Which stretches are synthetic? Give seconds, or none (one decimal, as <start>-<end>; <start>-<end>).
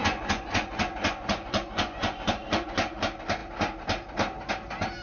0.0-3.0